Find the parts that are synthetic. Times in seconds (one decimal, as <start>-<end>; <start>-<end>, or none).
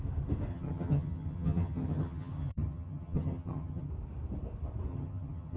0.5-3.9; 4.9-5.6